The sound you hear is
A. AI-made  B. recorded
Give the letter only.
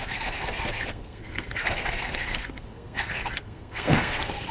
A